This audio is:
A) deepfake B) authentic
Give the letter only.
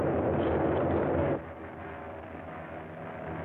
B